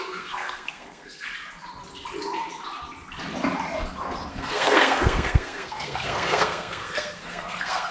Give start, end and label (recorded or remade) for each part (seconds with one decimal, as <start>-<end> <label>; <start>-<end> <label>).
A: 0.0-1.3 remade; 1.3-4.3 recorded; 4.3-7.9 remade